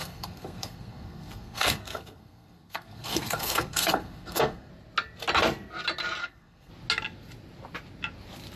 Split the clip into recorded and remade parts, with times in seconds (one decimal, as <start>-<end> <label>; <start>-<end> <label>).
0.0-4.7 remade; 4.7-6.2 recorded; 6.2-6.7 remade; 6.7-8.6 recorded